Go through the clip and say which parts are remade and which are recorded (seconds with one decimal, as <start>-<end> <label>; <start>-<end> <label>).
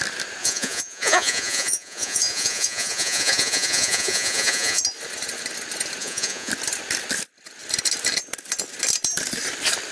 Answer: 0.0-0.4 recorded; 0.4-4.8 remade; 4.8-6.0 recorded; 6.0-6.5 remade; 6.5-9.9 recorded